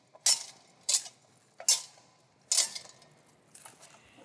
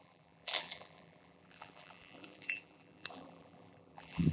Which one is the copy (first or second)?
second